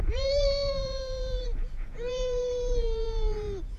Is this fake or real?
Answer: fake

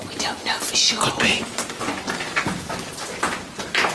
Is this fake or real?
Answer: real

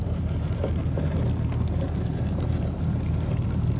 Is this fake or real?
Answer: real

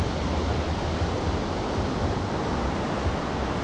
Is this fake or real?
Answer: real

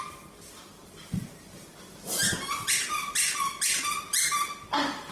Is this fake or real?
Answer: real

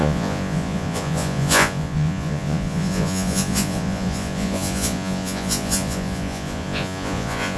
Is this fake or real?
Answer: fake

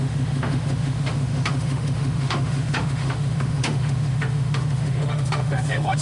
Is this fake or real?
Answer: fake